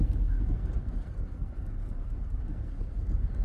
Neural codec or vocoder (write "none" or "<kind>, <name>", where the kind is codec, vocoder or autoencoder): codec, SNAC